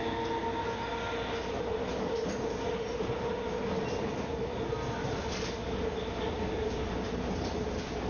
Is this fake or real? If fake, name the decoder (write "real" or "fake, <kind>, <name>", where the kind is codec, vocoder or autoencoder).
real